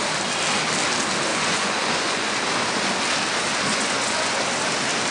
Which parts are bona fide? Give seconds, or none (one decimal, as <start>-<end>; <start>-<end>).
0.0-1.3; 2.3-3.7; 4.4-5.1